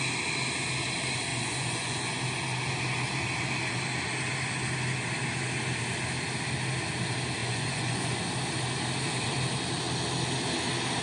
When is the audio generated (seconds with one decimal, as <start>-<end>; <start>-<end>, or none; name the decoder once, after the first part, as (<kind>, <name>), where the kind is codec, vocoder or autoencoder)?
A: 1.3-2.2 (vocoder, Vocos); 7.4-8.2